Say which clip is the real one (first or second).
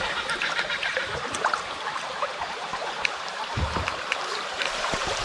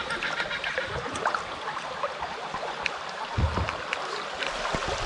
second